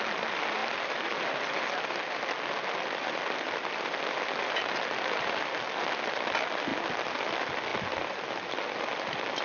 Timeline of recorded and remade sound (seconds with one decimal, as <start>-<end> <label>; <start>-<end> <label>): 0.0-9.4 recorded